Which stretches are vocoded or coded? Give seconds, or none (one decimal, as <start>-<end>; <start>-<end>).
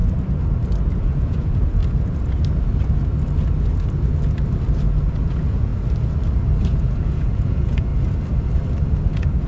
1.0-1.8; 5.2-5.7; 6.6-7.9; 9.1-9.5